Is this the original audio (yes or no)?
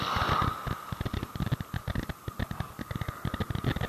yes